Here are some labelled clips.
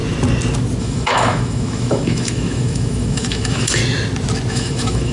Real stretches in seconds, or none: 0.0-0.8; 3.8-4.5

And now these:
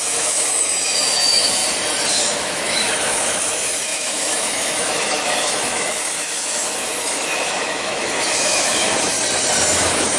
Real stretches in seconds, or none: 1.6-2.1; 9.1-9.7